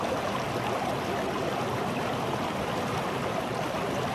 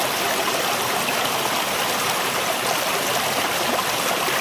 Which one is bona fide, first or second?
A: first